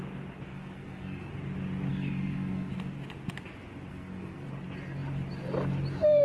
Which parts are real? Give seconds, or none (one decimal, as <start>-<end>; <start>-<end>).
0.0-0.5; 1.3-1.9; 2.7-3.9; 4.5-6.2